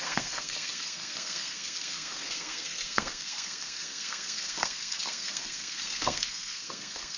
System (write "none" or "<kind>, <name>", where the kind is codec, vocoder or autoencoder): codec, SNAC